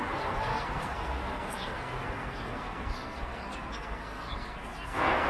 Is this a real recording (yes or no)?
no